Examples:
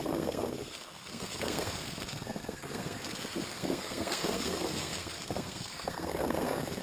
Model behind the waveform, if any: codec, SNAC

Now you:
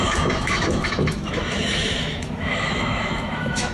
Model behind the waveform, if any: autoencoder, DAC-VAE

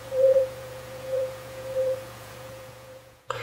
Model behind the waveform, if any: vocoder, Vocos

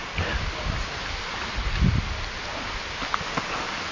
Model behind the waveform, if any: none